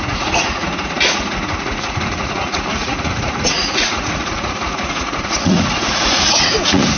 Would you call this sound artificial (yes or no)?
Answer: yes